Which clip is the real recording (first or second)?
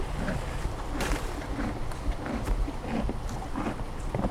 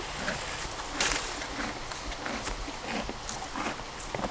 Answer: second